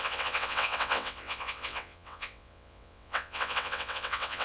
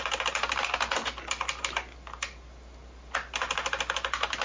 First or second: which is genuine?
second